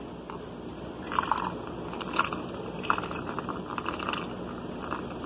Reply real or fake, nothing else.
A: real